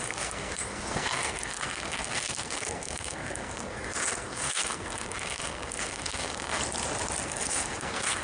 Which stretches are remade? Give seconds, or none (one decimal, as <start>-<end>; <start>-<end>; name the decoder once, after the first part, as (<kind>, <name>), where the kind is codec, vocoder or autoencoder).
0.0-6.6 (codec, SNAC); 7.2-8.2